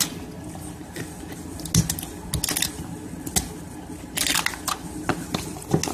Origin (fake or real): real